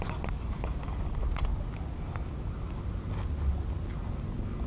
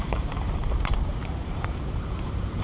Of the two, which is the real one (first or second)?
first